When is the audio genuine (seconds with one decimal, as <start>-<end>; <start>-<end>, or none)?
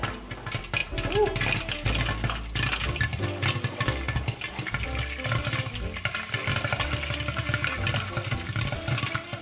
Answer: 0.0-9.4